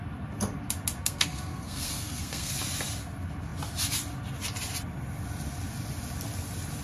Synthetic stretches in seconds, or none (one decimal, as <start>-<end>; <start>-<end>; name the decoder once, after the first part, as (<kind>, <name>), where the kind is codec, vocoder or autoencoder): 1.0-2.5 (codec, SNAC)